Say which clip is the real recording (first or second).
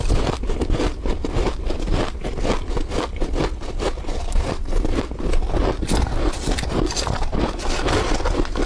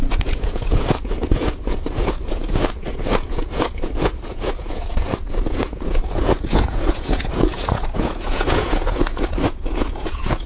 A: first